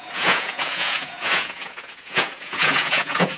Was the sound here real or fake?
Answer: fake